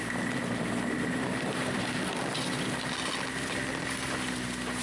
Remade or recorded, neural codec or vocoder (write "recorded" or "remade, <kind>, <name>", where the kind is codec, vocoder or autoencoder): recorded